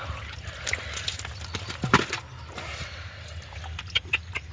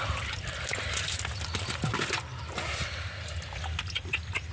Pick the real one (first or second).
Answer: first